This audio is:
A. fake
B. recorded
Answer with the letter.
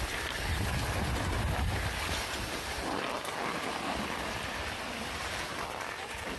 B